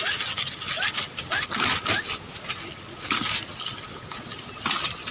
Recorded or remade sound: recorded